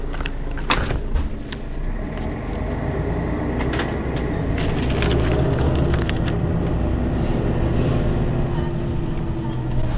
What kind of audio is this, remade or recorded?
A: recorded